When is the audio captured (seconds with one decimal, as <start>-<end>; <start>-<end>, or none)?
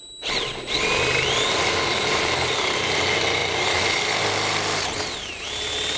0.0-6.0